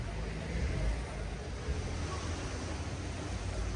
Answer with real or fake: real